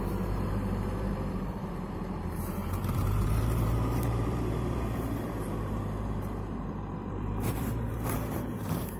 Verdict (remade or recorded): remade